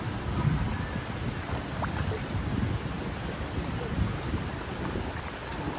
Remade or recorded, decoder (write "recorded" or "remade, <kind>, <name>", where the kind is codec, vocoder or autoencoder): recorded